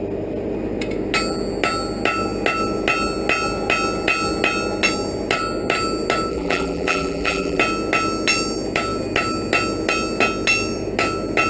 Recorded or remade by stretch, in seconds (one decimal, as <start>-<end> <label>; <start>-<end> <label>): 0.0-6.3 recorded; 6.3-7.6 remade; 7.6-11.5 recorded